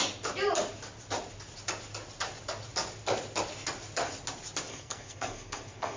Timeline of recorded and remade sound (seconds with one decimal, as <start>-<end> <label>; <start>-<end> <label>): 0.0-4.7 recorded; 4.7-6.0 remade